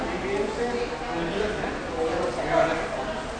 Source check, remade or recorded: recorded